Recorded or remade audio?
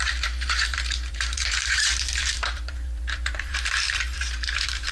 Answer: remade